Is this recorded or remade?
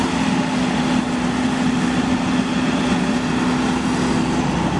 recorded